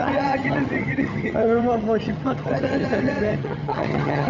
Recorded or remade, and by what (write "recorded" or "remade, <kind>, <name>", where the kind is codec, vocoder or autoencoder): remade, vocoder, HiFi-GAN